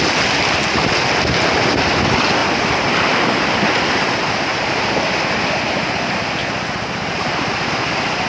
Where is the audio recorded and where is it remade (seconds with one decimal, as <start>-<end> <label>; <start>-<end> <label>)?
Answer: 0.0-2.4 recorded; 2.4-4.7 remade; 4.7-6.4 recorded; 6.4-7.7 remade; 7.7-8.3 recorded